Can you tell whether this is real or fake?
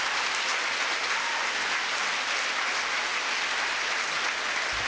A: real